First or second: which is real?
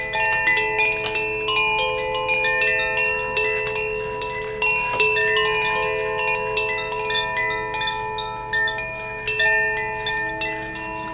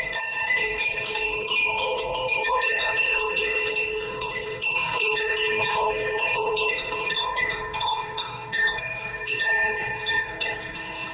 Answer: first